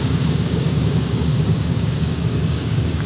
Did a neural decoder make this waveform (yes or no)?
yes